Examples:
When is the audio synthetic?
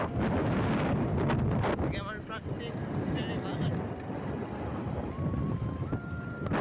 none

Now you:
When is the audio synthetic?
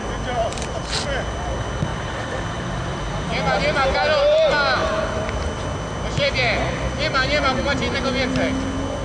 1.9-3.0 (vocoder, BigVGAN v2)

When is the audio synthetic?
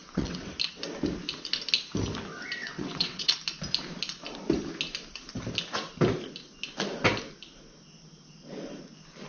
0.0-0.5 (vocoder, WaveNeXt); 2.6-3.3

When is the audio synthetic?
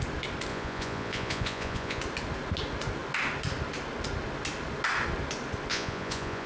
0.5-2.0 (vocoder, Vocos); 5.7-6.5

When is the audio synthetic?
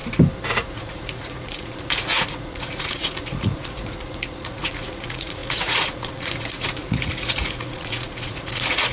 0.7-8.9 (vocoder, Vocos)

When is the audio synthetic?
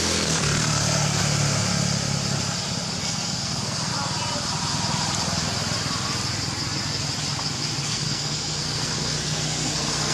0.0-1.2 (codec, SNAC); 3.0-3.9; 7.8-10.1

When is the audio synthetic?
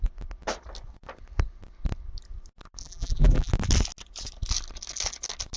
2.8-3.5 (vocoder, BigVGAN v2)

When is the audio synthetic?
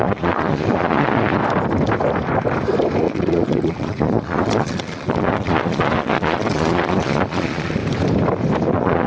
0.0-1.4 (vocoder, Vocos); 3.0-7.8; 8.7-9.1